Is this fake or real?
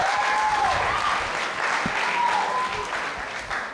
real